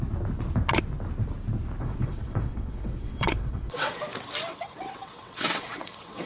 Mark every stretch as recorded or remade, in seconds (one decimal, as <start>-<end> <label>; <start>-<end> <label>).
0.0-1.8 recorded; 1.8-4.0 remade; 4.0-4.5 recorded; 4.5-6.3 remade

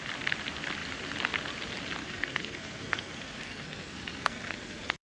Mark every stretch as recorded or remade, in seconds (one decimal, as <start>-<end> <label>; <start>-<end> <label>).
0.0-2.0 recorded; 2.0-5.2 remade

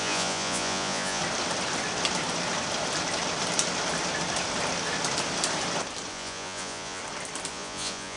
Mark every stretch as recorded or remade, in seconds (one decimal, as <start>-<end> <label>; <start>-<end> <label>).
0.0-1.2 remade; 1.2-6.1 recorded; 6.1-7.0 remade; 7.0-7.5 recorded; 7.5-8.2 remade

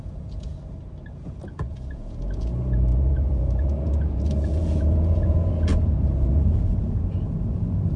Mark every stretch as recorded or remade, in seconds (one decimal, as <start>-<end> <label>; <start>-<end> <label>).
0.0-0.5 remade; 0.5-1.1 recorded; 1.1-8.0 remade

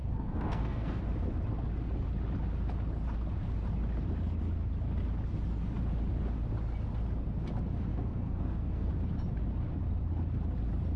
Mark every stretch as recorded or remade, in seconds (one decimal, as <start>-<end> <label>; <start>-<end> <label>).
0.0-1.0 remade; 1.0-7.9 recorded; 7.9-8.9 remade; 8.9-11.0 recorded

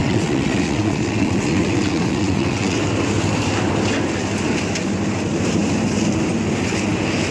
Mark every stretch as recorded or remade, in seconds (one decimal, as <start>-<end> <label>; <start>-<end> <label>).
0.0-2.8 remade; 2.8-7.3 recorded

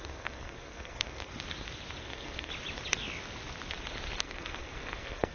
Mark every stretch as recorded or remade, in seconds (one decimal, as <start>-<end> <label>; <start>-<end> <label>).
0.0-1.3 remade; 1.3-2.0 recorded; 2.0-2.5 remade; 2.5-4.2 recorded; 4.2-5.3 remade

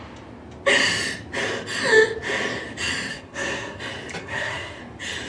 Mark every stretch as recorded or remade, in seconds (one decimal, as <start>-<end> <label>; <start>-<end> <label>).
0.0-3.1 recorded; 3.1-3.8 remade; 3.8-4.2 recorded; 4.2-4.8 remade; 4.8-5.3 recorded